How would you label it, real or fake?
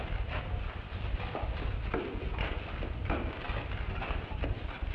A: real